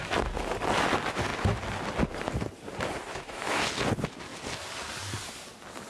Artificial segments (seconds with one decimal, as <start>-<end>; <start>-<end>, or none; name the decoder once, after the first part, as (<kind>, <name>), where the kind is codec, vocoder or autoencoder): 3.1-3.6 (autoencoder, DAC-VAE)